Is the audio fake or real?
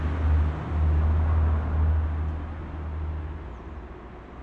real